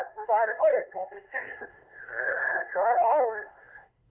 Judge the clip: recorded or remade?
remade